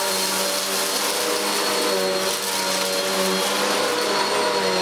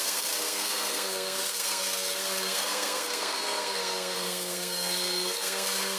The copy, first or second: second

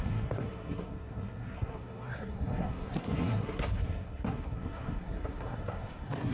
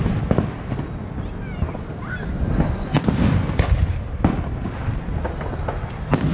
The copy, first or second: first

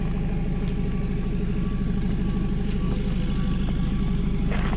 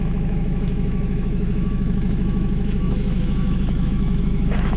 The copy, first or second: second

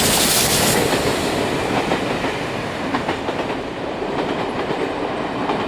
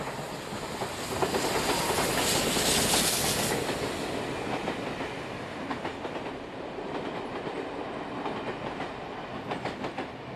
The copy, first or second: first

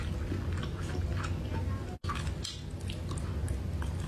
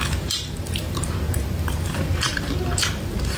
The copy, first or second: second